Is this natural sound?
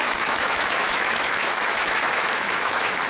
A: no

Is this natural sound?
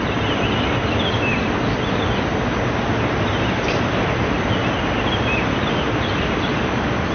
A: yes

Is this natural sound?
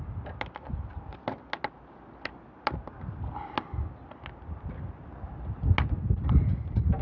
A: yes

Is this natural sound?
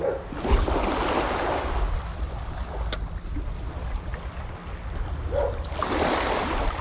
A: yes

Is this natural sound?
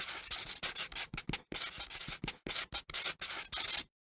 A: yes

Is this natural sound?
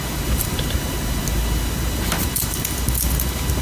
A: yes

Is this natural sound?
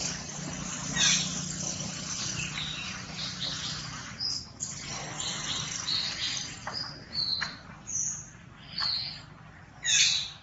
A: yes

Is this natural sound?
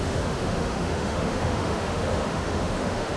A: no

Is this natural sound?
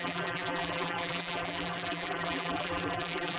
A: no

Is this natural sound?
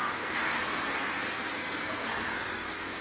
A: no